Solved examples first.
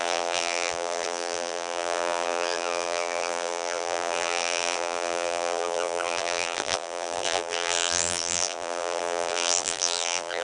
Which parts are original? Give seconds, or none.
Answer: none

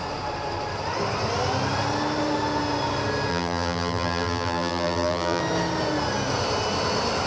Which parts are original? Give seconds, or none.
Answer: 0.0-3.3; 5.4-7.3

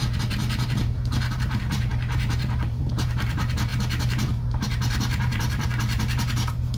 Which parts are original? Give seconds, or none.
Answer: none

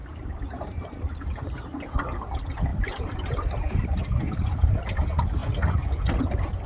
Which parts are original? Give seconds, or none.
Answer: 1.9-2.7; 4.2-6.7

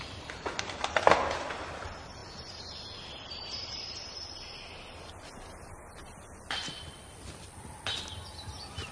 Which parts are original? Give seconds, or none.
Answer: 0.0-8.9